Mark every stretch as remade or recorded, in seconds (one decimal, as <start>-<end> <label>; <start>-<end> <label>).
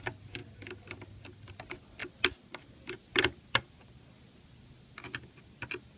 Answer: 0.0-6.0 recorded